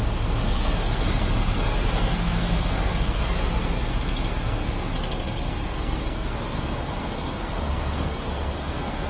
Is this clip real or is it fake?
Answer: fake